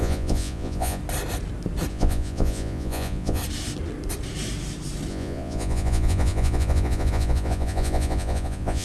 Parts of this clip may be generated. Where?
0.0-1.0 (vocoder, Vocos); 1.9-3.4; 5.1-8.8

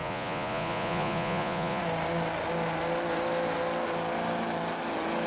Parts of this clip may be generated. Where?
0.0-1.8 (vocoder, Vocos)

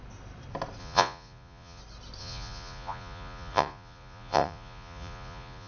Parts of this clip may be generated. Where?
0.8-1.8 (vocoder, Vocos); 2.2-5.7

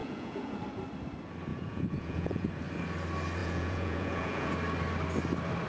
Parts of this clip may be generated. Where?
0.0-0.6 (vocoder, Vocos); 1.5-2.5; 3.4-4.5